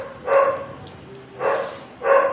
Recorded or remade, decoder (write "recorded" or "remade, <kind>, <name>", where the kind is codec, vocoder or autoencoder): recorded